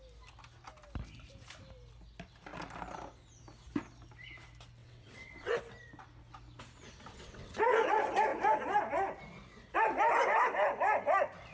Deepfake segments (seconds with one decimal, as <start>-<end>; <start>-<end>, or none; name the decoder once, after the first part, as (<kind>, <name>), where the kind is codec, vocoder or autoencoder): 4.8-5.6 (vocoder, WaveNeXt); 7.1-7.6